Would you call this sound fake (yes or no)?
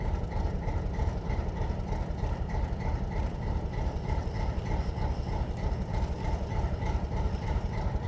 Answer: no